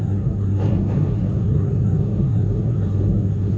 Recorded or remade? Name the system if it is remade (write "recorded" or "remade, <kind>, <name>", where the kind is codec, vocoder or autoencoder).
remade, codec, SNAC